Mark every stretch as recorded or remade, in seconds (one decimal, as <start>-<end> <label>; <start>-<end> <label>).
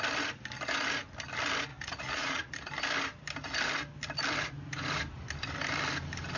0.0-1.7 recorded; 1.7-2.5 remade; 2.5-6.4 recorded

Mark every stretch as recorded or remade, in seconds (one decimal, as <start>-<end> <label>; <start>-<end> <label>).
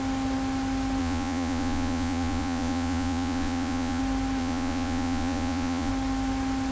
0.0-1.0 recorded; 1.0-4.0 remade; 4.0-4.4 recorded; 4.4-5.9 remade; 5.9-6.7 recorded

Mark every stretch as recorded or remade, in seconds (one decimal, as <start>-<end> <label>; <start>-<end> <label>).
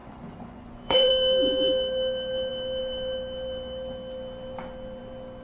0.0-1.1 remade; 1.1-5.4 recorded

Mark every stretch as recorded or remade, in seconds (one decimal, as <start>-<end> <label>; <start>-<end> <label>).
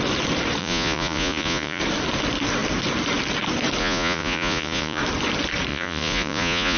0.0-0.6 recorded; 0.6-1.8 remade; 1.8-3.8 recorded; 3.8-5.0 remade; 5.0-5.7 recorded; 5.7-6.8 remade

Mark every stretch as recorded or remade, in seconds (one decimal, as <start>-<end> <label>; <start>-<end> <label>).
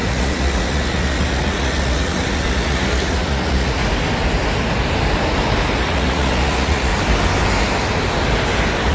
0.0-3.8 remade; 3.8-5.8 recorded; 5.8-6.9 remade; 6.9-8.9 recorded